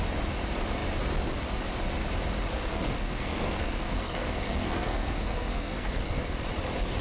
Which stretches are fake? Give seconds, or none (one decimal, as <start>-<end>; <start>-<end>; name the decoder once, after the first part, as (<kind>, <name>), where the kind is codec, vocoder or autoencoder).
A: 2.5-6.2 (codec, SNAC)